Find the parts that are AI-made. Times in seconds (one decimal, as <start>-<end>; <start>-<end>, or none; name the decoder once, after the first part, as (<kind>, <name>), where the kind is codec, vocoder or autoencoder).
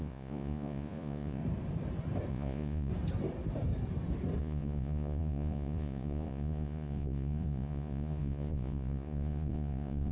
0.0-1.4 (vocoder, Vocos); 2.3-2.9; 4.4-10.1